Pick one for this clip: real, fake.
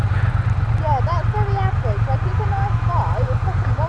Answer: real